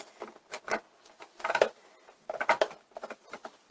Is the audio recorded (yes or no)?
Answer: yes